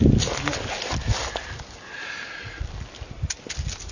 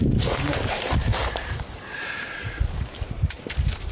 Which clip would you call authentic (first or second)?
first